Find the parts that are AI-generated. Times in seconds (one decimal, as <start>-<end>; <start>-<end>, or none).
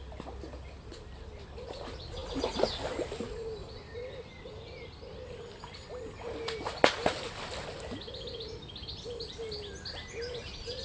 none